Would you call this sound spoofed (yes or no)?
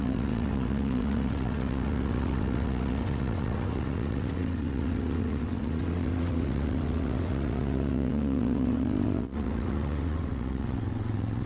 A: yes